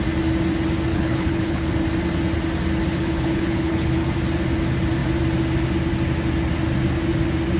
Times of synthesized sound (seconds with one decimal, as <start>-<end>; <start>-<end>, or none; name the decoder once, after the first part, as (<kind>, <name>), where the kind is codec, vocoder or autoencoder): 0.9-1.7 (codec, HILCodec); 2.9-4.1